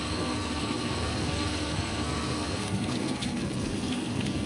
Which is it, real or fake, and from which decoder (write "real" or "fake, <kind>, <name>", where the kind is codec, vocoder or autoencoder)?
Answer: fake, codec, SNAC